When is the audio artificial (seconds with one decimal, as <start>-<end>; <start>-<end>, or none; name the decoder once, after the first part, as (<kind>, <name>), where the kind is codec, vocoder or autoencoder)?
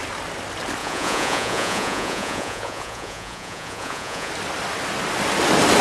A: 0.8-4.3 (vocoder, Vocos)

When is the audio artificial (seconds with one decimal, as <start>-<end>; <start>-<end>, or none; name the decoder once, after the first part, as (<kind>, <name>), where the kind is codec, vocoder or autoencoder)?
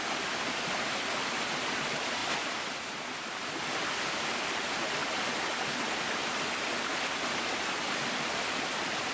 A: none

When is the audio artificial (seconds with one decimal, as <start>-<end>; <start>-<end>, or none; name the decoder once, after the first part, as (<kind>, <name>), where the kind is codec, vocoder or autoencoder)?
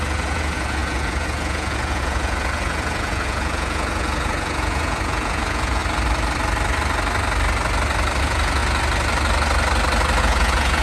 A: 0.0-5.8 (vocoder, Vocos); 8.2-8.6; 10.2-10.8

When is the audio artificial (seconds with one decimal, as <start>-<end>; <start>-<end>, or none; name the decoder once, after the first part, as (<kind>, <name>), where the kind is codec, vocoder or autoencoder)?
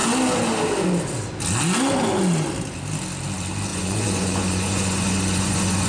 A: 3.7-5.9 (vocoder, Vocos)